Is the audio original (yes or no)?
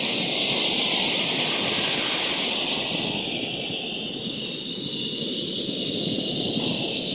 yes